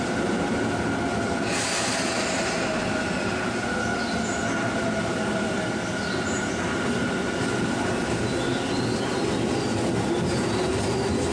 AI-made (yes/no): no